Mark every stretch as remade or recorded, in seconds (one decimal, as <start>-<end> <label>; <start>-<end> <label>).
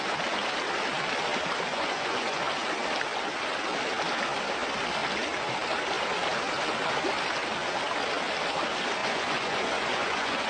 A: 0.0-1.7 recorded; 1.7-2.4 remade; 2.4-9.0 recorded; 9.0-10.5 remade